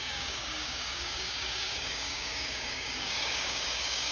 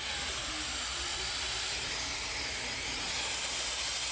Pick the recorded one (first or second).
second